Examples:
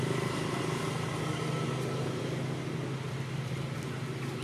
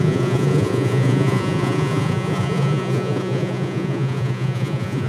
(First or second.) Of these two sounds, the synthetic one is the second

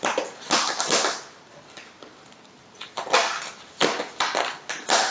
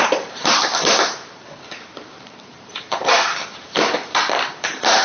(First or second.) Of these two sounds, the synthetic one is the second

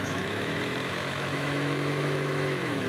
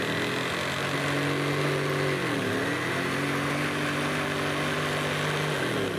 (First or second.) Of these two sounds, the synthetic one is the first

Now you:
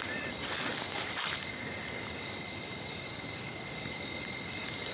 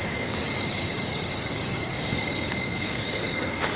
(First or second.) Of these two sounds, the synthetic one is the second